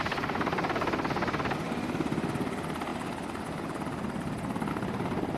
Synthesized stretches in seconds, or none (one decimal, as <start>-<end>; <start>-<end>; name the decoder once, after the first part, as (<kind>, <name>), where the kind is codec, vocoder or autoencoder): none

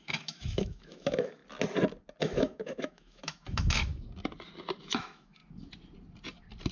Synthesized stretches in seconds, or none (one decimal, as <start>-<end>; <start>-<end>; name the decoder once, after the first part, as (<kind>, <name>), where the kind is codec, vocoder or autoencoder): 0.0-1.4 (autoencoder, DAC-VAE); 2.2-3.9; 4.8-5.4

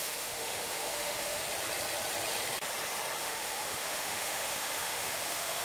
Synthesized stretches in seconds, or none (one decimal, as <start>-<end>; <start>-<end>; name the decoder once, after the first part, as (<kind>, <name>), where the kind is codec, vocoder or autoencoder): 0.0-1.4 (autoencoder, DAC-VAE); 3.2-5.6

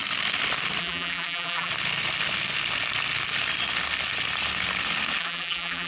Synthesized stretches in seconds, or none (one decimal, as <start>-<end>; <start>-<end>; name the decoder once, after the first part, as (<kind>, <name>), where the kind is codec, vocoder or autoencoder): 0.8-1.7 (vocoder, BigVGAN v2); 5.2-5.9

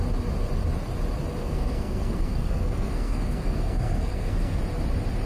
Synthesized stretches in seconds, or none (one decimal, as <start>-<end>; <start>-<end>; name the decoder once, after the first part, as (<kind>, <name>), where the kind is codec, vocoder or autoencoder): 1.4-4.6 (codec, SNAC)

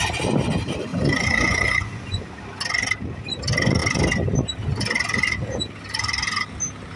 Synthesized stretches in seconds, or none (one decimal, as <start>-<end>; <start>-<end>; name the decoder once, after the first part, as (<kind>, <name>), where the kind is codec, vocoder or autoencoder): 0.9-2.2 (vocoder, Vocos)

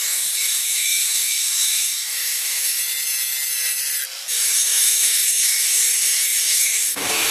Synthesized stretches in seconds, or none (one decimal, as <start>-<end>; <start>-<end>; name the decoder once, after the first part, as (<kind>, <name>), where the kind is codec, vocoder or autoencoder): 0.0-2.8 (codec, DAC); 4.3-7.3

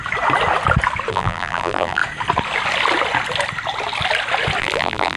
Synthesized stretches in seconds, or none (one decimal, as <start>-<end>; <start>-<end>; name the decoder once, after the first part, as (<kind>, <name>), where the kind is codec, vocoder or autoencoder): 1.1-2.0 (vocoder, BigVGAN v2); 4.6-5.2